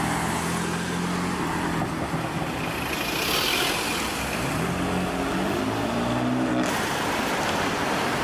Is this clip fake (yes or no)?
no